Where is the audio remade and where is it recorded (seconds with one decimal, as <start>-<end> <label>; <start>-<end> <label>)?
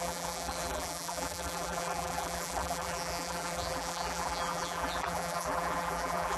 0.0-6.4 remade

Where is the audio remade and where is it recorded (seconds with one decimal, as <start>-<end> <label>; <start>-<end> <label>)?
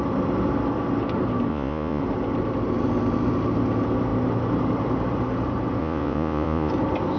0.0-1.5 recorded; 1.5-2.0 remade; 2.0-5.8 recorded; 5.8-6.7 remade; 6.7-7.2 recorded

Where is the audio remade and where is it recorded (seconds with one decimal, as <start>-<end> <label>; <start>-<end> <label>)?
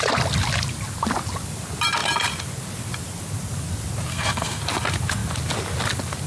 0.0-4.1 recorded; 4.1-4.6 remade; 4.6-6.3 recorded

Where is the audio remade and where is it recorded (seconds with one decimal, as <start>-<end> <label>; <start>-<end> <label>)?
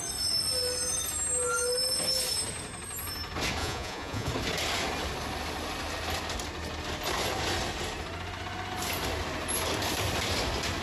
0.0-3.6 recorded; 3.6-4.3 remade; 4.3-10.8 recorded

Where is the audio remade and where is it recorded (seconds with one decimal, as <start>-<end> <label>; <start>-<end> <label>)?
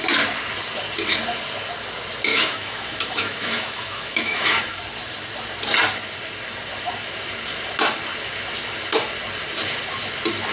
0.0-2.3 recorded; 2.3-4.8 remade; 4.8-10.5 recorded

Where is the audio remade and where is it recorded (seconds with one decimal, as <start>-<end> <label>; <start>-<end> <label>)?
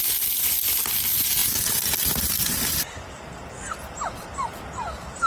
0.0-5.3 recorded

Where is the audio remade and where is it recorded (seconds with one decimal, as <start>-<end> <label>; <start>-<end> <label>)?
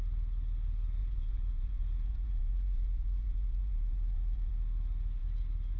0.0-1.0 recorded; 1.0-4.5 remade; 4.5-5.8 recorded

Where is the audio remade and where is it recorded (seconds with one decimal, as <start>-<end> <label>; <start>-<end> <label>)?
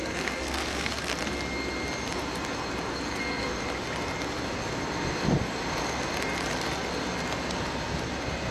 0.0-1.1 remade; 1.1-2.9 recorded; 2.9-3.5 remade; 3.5-8.5 recorded